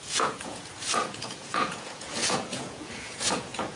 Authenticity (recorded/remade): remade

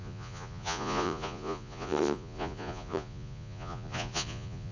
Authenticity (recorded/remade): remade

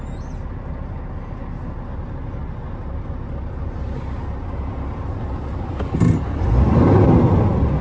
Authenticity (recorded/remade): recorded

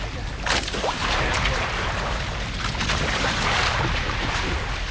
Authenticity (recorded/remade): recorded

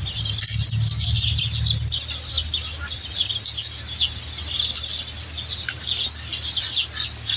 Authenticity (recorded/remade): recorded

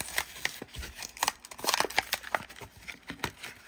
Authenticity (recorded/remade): recorded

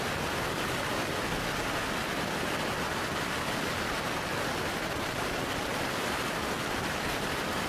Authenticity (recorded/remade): recorded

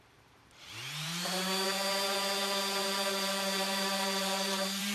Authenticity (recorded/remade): remade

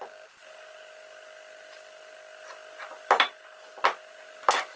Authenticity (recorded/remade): recorded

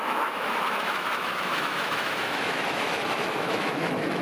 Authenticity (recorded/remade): remade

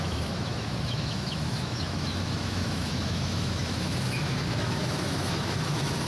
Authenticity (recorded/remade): remade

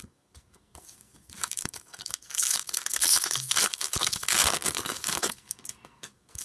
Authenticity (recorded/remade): remade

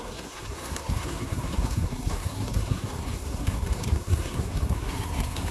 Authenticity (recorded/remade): remade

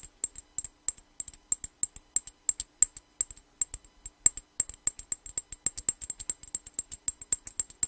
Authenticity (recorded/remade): recorded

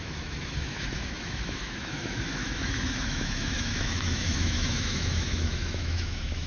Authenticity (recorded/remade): remade